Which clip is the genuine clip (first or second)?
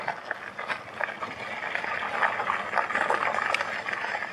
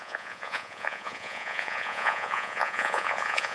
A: first